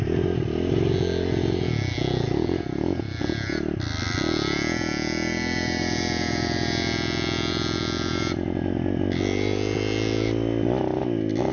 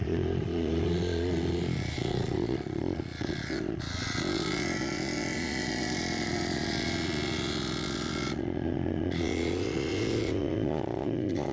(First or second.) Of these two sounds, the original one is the first